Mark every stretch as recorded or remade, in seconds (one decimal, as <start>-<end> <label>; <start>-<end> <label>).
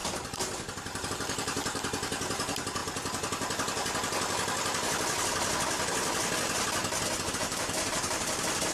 0.0-2.8 remade; 2.8-7.3 recorded; 7.3-8.7 remade